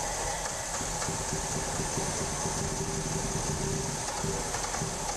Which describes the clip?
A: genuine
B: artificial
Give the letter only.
A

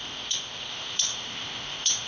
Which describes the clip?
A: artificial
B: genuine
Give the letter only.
A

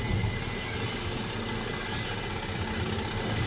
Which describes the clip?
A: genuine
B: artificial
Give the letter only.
A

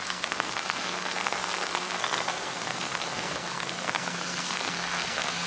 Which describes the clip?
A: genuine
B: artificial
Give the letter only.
B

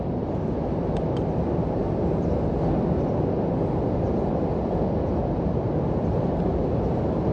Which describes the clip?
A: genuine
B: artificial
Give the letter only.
A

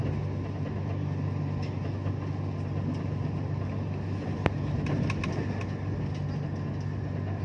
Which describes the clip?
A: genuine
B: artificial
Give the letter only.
A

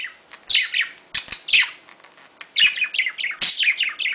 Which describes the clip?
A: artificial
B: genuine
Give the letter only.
B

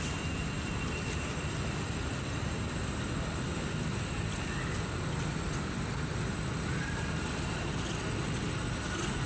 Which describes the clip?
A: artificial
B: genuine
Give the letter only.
B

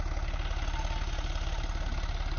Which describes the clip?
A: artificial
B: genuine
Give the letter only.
B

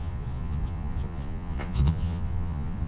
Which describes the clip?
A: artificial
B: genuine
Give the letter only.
A